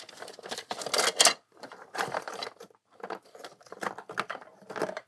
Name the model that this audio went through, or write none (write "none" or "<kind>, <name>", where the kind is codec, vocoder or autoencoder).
none